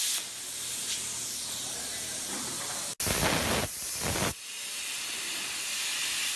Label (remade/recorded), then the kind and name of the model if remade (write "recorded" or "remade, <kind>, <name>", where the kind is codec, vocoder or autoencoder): recorded